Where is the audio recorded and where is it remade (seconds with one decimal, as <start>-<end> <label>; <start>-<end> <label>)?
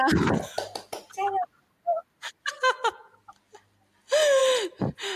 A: 0.0-5.2 recorded